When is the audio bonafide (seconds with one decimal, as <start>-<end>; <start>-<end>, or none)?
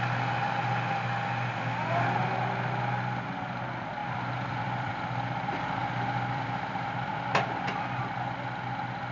0.0-4.0; 4.9-5.8; 8.0-9.1